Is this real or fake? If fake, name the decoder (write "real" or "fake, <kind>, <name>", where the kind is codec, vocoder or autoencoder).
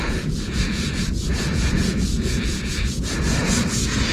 fake, vocoder, Vocos